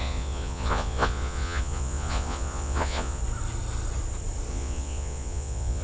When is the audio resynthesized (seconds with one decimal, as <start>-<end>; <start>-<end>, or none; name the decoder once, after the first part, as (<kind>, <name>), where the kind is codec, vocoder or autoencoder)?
0.0-3.2 (vocoder, Vocos); 4.5-5.8